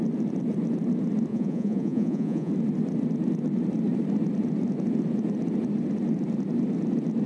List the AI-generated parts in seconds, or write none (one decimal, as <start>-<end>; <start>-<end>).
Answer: 1.3-2.5